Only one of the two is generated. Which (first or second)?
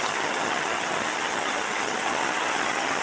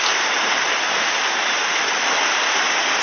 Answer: first